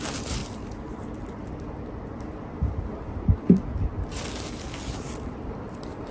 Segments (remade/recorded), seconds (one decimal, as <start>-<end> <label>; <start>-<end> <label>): 0.0-6.1 recorded